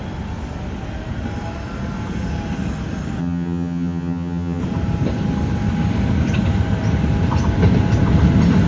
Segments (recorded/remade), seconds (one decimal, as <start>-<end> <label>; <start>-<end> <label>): 0.0-3.2 recorded; 3.2-4.6 remade; 4.6-8.7 recorded